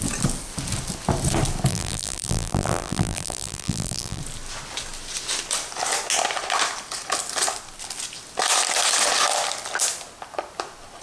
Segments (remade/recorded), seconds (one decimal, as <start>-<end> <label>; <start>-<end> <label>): 0.0-1.7 recorded; 1.7-4.2 remade; 4.2-11.0 recorded